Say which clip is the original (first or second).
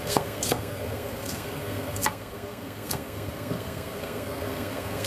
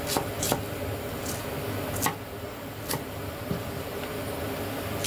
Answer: second